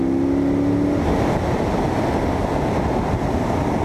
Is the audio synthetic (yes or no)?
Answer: no